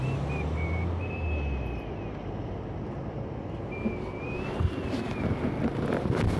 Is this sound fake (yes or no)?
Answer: no